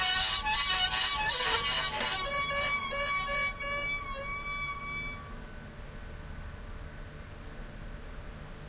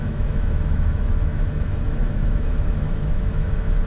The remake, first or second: second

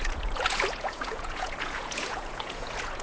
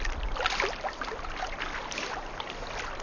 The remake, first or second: first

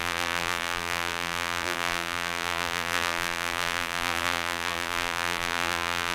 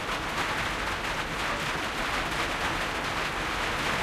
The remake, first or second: first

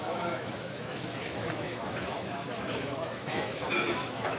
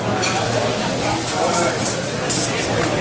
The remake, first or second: first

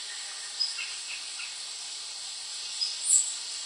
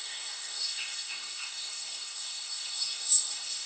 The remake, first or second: second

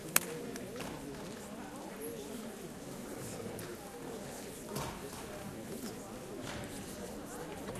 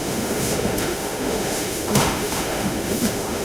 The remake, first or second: second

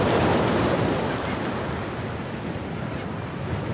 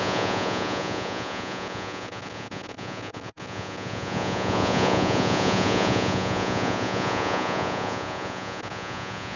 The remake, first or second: second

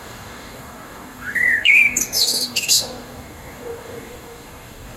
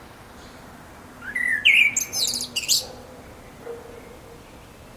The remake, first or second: first